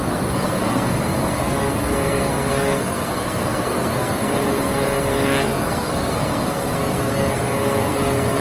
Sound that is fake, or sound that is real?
fake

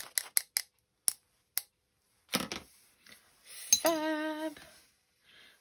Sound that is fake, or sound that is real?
real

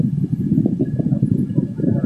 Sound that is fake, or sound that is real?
real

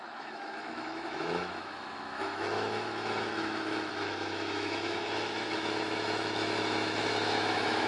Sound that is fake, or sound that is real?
fake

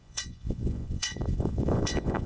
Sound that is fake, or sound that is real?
fake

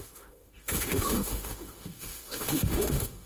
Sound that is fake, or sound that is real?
fake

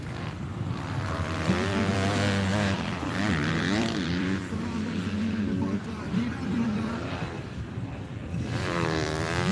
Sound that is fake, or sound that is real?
fake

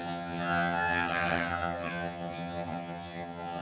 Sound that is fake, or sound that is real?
fake